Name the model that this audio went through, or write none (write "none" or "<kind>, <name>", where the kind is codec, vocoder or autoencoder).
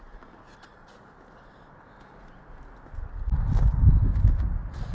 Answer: none